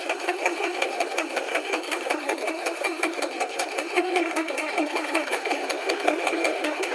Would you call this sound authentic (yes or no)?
no